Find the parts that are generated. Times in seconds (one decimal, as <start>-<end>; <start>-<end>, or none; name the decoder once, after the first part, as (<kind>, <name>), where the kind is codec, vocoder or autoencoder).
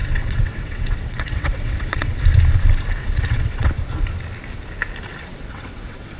0.0-2.2 (vocoder, WaveNeXt); 3.0-3.7; 5.3-6.2